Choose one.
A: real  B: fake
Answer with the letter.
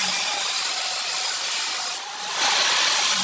A